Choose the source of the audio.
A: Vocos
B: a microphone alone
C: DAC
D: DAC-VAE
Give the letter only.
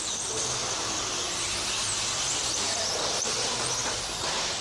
B